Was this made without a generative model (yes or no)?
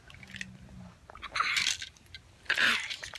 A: yes